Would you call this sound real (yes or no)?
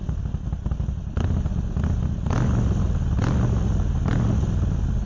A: yes